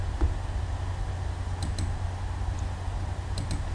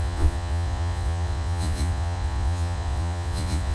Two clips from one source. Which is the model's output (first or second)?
second